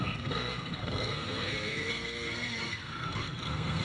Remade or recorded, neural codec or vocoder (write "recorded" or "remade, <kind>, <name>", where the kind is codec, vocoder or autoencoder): remade, codec, SNAC